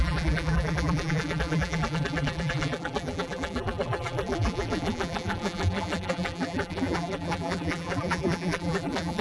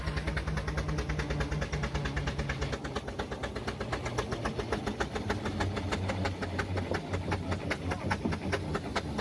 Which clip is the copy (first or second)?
first